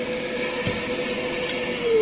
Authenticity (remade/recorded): recorded